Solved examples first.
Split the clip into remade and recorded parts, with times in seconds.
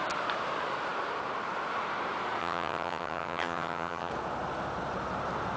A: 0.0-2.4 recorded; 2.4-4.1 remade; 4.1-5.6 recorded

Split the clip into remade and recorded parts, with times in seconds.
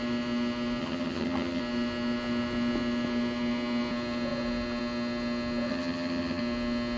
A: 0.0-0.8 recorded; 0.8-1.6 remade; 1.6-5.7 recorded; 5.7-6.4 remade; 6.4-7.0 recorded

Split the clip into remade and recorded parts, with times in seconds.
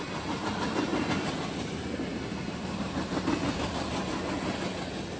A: 0.0-5.2 recorded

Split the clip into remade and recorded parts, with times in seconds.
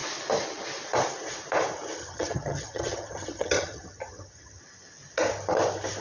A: 0.0-2.0 recorded; 2.0-4.6 remade; 4.6-6.0 recorded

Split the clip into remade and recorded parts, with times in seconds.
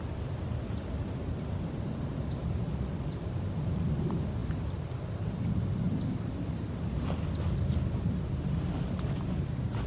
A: 0.0-9.9 recorded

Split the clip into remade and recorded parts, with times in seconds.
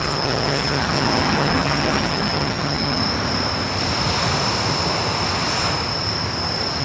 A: 0.0-3.0 remade; 3.0-6.8 recorded